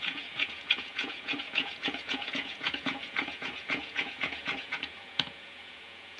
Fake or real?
fake